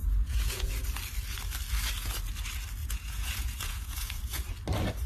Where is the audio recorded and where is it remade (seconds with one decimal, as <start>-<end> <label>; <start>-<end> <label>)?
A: 0.0-0.7 remade; 0.7-2.8 recorded; 2.8-4.5 remade; 4.5-5.1 recorded